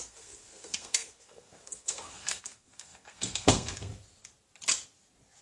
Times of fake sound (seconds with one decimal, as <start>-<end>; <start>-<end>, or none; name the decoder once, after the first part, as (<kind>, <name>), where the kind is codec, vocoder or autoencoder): 0.0-3.9 (codec, SNAC)